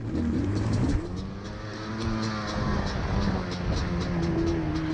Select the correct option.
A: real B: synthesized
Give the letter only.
A